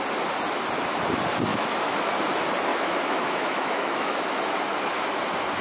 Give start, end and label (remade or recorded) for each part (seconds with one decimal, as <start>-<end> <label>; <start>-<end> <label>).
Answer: 0.0-1.5 recorded; 1.5-2.1 remade; 2.1-2.7 recorded; 2.7-4.4 remade; 4.4-5.6 recorded